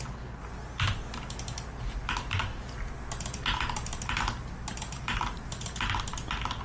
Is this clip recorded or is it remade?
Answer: recorded